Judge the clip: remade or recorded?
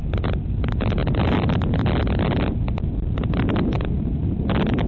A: recorded